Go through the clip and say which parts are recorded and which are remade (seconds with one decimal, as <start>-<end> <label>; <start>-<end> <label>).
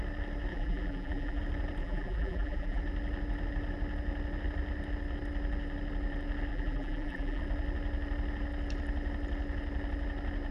0.0-0.5 recorded; 0.5-1.4 remade; 1.4-1.8 recorded; 1.8-2.8 remade; 2.8-6.5 recorded; 6.5-7.4 remade; 7.4-10.5 recorded